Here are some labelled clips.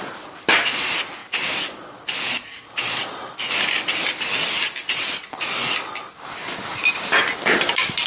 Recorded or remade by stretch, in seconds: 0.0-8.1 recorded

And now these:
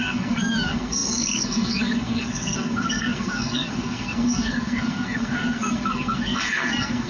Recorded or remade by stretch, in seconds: 0.0-7.1 remade